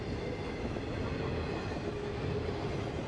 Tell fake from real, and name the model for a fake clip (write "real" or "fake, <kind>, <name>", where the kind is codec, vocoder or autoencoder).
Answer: real